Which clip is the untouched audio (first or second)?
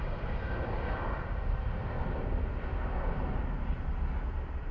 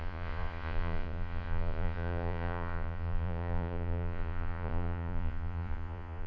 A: first